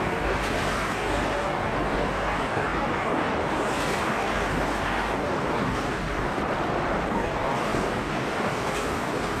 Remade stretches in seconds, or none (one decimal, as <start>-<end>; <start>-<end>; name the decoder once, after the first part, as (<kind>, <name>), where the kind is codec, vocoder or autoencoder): 0.0-6.4 (codec, DAC); 7.1-9.4